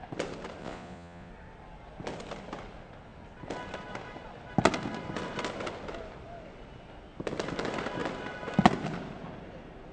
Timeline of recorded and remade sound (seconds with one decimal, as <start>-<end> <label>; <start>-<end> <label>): 0.0-0.6 recorded; 0.6-1.3 remade; 1.3-9.9 recorded